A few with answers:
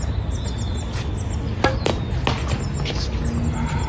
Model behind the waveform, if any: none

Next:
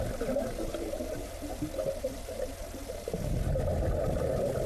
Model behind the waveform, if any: none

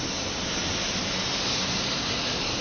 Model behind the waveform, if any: none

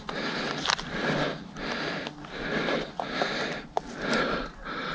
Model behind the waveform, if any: none